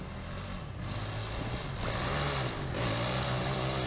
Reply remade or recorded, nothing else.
recorded